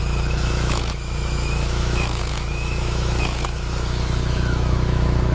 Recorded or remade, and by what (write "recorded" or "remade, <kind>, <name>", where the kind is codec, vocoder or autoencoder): remade, autoencoder, DAC-VAE